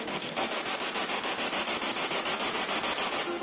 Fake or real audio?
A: real